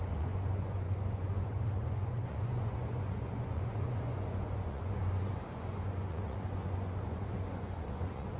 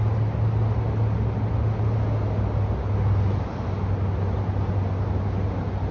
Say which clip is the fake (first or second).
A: first